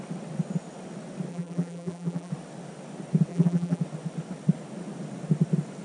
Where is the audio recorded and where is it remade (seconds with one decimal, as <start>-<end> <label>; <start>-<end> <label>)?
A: 0.0-1.3 recorded; 1.3-2.3 remade; 2.3-3.3 recorded; 3.3-3.8 remade; 3.8-5.8 recorded